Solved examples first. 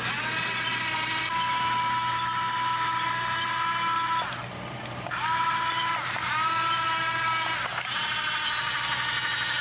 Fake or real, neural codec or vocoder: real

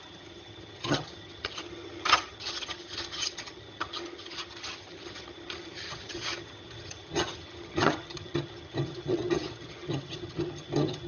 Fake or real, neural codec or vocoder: fake, vocoder, HiFi-GAN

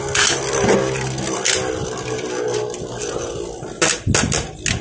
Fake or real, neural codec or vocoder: real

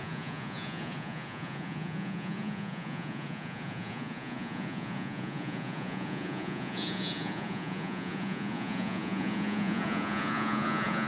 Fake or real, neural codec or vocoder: fake, vocoder, Vocos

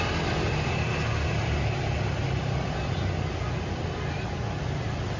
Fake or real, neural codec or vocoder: real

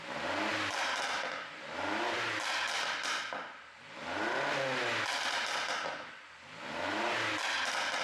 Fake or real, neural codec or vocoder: real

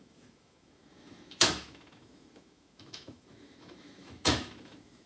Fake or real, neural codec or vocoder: fake, autoencoder, DAC-VAE